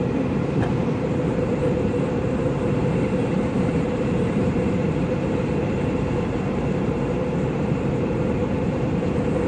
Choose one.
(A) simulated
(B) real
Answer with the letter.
A